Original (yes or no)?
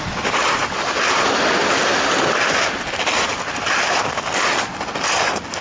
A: yes